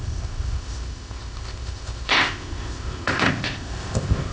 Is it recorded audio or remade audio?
remade